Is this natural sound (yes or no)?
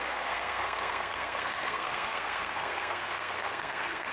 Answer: no